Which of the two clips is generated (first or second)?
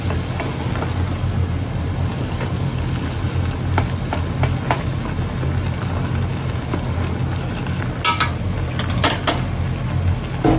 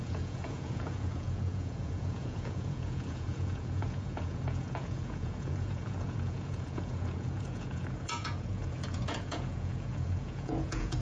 second